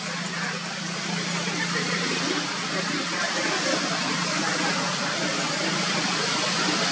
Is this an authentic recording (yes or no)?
yes